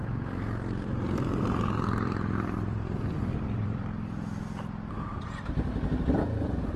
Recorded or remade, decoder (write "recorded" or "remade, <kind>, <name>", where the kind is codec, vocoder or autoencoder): remade, vocoder, BigVGAN v2